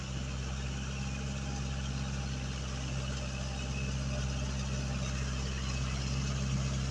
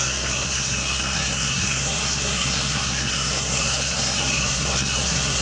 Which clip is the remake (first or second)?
second